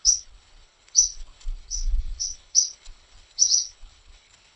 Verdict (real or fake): fake